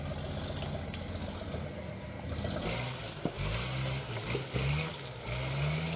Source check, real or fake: real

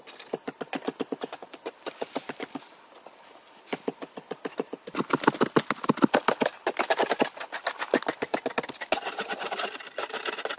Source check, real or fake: real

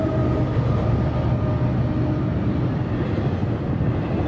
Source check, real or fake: real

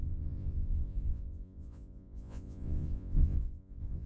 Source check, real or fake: fake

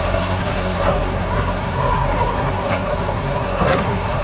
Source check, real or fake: fake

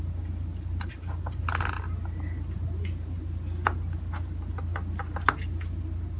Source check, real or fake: real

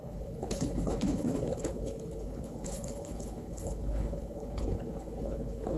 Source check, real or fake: fake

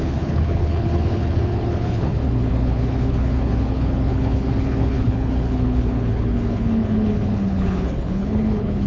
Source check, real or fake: fake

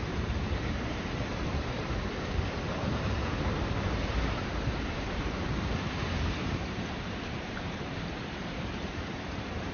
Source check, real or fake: fake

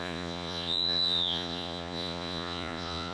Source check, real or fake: fake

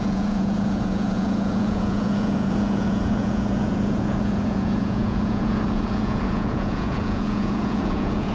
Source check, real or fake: fake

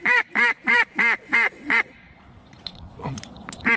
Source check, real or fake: fake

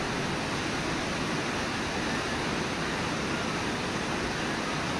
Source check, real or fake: real